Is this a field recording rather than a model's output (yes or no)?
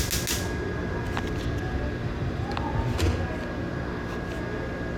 yes